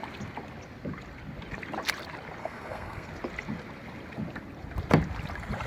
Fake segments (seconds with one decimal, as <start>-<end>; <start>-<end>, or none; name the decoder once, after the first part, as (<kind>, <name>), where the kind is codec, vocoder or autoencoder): 2.4-3.1 (codec, SNAC)